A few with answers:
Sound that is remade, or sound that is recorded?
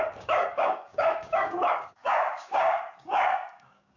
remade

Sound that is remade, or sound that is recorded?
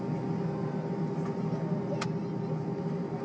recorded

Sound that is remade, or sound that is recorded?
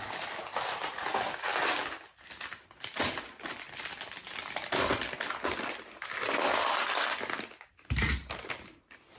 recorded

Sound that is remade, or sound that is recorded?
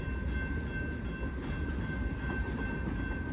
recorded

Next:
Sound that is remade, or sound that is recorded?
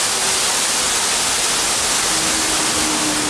recorded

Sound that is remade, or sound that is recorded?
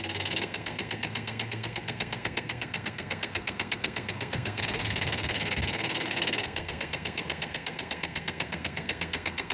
remade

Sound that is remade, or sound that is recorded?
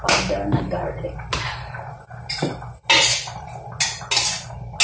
recorded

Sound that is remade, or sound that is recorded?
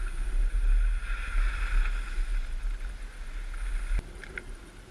recorded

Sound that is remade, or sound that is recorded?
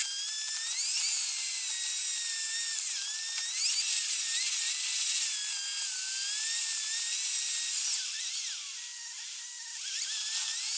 recorded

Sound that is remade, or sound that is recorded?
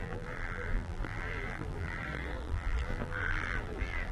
remade